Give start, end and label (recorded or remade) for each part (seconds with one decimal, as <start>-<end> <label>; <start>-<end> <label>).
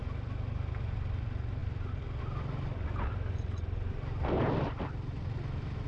0.0-5.9 recorded